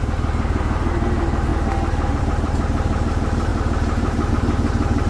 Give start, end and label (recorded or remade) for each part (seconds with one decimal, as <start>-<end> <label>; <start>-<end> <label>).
0.0-1.5 remade; 1.5-2.2 recorded; 2.2-5.1 remade